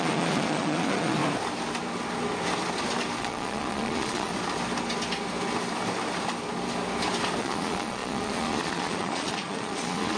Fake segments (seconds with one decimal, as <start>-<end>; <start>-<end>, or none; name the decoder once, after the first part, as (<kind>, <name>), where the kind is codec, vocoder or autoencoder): 0.0-1.2 (vocoder, Vocos); 3.2-4.3; 7.4-10.2